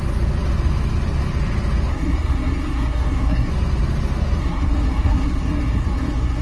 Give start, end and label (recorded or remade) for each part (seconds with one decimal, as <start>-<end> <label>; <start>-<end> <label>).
0.0-1.9 recorded; 1.9-3.5 remade; 3.5-4.4 recorded; 4.4-6.4 remade